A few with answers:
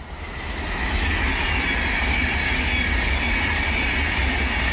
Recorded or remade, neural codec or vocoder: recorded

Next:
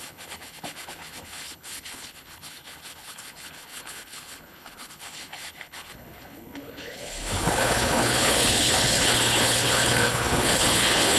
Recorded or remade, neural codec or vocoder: remade, codec, HILCodec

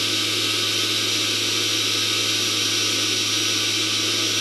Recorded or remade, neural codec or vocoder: recorded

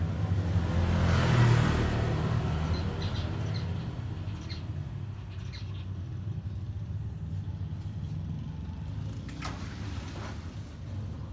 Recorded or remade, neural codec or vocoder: recorded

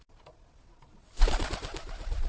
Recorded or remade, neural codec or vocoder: recorded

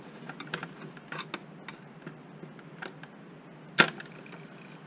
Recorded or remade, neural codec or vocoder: recorded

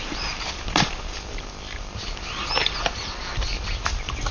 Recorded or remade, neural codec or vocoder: recorded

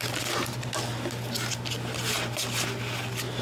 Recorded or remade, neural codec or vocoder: recorded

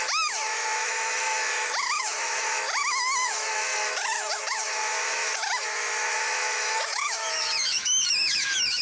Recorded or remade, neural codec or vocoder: remade, autoencoder, DAC-VAE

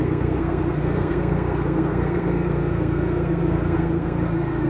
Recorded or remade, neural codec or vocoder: remade, codec, SNAC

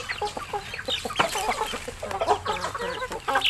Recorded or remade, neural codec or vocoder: recorded